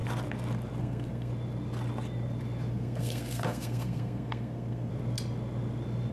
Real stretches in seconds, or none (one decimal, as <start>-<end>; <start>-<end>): 0.0-0.8; 1.3-2.7; 4.9-6.1